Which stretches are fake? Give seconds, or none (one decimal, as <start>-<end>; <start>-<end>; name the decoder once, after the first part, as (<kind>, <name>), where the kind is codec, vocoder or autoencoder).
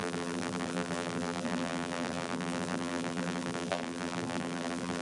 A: 0.0-5.0 (vocoder, BigVGAN v2)